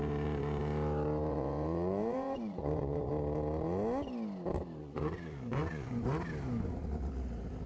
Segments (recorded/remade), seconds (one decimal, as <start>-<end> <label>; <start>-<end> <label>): 0.0-1.3 recorded; 1.3-3.1 remade; 3.1-4.8 recorded; 4.8-6.0 remade; 6.0-7.7 recorded